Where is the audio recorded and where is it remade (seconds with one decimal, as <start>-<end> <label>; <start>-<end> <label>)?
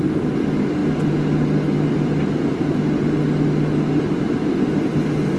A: 0.0-5.4 recorded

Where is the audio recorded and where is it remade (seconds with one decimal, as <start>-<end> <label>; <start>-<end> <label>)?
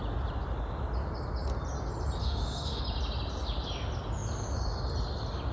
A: 0.0-2.2 recorded; 2.2-2.8 remade; 2.8-5.5 recorded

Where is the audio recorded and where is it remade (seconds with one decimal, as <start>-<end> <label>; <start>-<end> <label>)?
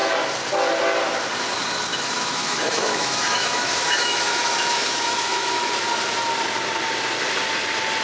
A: 0.0-1.9 recorded; 1.9-5.7 remade; 5.7-8.0 recorded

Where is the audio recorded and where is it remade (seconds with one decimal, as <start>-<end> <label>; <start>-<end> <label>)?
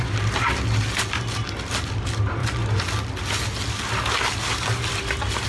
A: 0.0-5.5 recorded